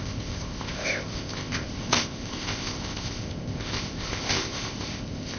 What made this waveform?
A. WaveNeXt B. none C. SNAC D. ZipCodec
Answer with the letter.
D